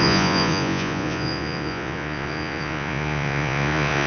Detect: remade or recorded remade